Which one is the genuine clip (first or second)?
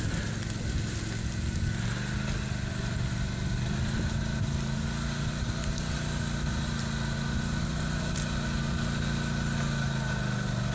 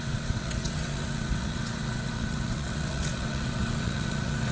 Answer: first